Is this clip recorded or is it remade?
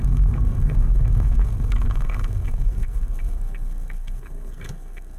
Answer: remade